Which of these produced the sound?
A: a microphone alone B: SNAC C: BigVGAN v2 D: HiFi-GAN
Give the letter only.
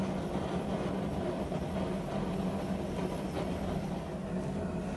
A